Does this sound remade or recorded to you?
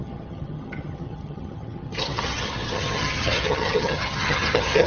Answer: remade